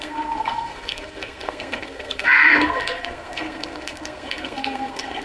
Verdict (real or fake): fake